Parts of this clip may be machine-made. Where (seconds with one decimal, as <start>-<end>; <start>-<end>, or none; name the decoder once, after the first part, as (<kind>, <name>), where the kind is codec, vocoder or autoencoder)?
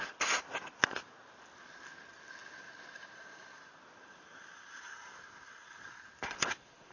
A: 2.4-4.2 (vocoder, BigVGAN v2)